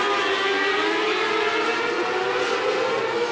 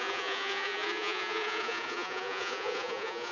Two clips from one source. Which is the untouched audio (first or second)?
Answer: first